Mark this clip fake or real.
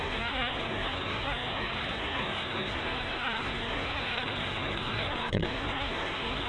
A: fake